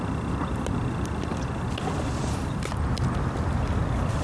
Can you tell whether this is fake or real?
real